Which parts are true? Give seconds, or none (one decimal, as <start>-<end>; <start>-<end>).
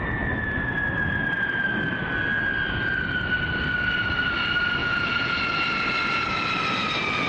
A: 0.0-4.8; 5.4-7.3